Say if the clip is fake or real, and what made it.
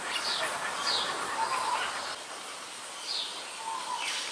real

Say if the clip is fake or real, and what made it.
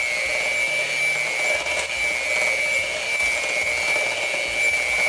real